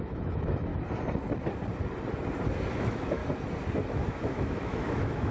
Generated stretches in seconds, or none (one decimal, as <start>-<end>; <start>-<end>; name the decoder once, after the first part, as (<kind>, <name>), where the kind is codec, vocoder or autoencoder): 0.0-0.7 (autoencoder, DAC-VAE); 2.7-3.2; 3.9-5.3